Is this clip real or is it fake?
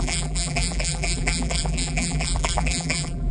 fake